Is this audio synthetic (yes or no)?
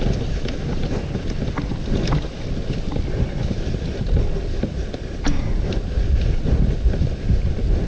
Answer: no